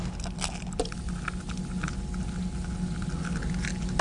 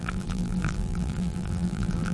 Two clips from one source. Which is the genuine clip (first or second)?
first